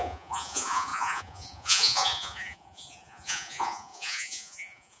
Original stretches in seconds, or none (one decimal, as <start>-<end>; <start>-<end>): none